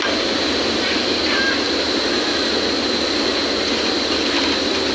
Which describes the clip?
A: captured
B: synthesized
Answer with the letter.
A